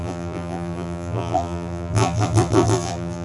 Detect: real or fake fake